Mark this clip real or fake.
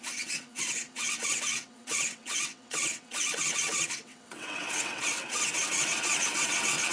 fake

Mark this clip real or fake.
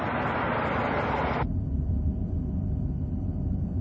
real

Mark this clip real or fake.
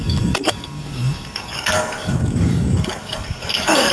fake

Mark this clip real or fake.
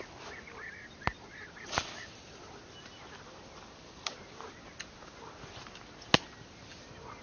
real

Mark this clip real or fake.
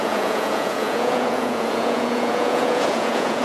fake